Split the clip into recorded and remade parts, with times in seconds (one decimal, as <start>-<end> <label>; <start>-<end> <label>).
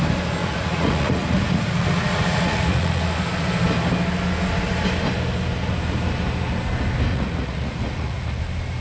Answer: 0.0-0.4 recorded; 0.4-3.0 remade; 3.0-7.1 recorded; 7.1-8.4 remade; 8.4-8.8 recorded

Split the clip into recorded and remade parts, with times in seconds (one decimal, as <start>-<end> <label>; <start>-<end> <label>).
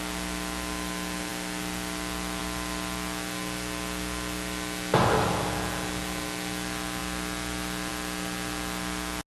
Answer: 0.0-9.4 recorded